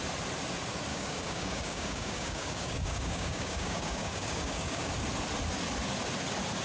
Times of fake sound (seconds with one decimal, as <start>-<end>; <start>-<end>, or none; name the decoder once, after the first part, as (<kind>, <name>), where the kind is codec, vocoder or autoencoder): 0.9-4.9 (codec, DAC)